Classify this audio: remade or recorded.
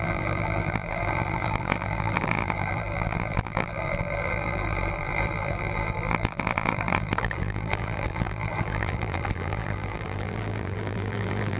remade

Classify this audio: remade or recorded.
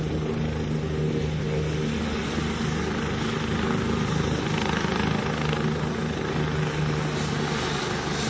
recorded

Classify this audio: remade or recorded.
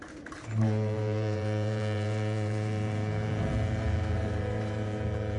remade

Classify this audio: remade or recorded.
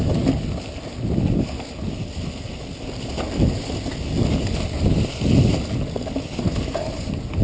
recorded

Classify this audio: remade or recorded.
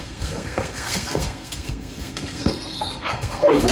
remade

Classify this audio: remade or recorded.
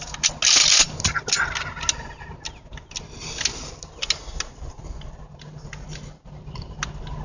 recorded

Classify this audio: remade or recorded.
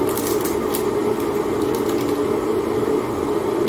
recorded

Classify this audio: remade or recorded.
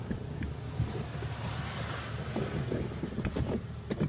recorded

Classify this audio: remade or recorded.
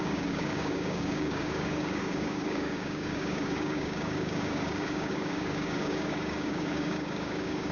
remade